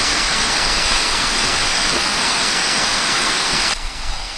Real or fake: fake